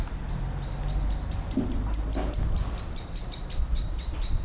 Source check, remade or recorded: recorded